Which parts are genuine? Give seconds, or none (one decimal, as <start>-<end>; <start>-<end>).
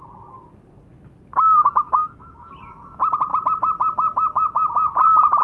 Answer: 0.0-2.0; 2.5-5.4